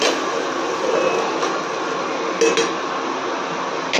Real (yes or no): yes